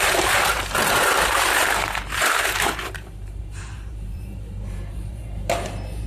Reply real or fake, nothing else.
fake